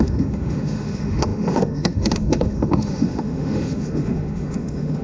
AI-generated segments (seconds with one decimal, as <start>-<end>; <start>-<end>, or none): 0.0-5.0